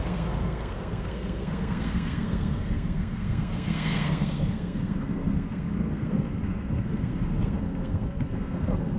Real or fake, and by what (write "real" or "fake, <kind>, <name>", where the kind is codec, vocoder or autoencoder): fake, codec, SNAC